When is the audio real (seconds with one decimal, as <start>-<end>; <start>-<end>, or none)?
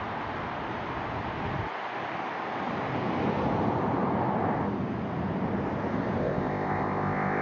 0.0-6.2